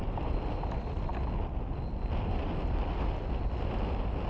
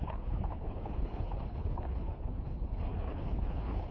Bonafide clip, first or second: first